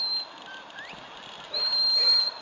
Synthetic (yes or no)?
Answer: no